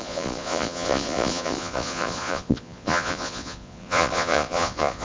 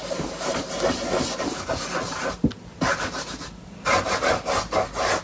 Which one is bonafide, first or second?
second